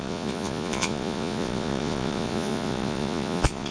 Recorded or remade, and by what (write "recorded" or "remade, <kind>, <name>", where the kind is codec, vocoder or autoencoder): remade, vocoder, Vocos